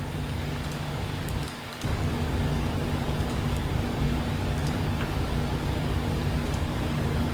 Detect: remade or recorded remade